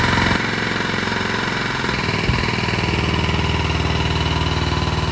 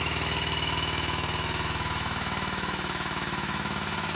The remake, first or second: second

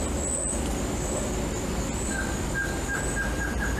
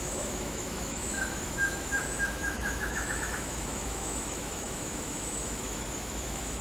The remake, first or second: second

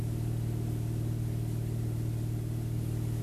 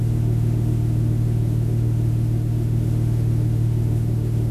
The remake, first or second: second